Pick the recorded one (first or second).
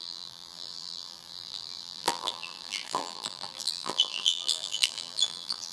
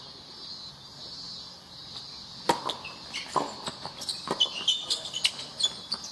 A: second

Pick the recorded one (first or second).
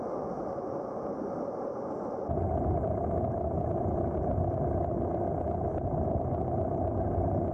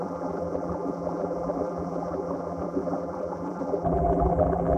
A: first